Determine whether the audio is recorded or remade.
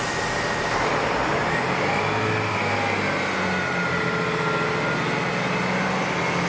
recorded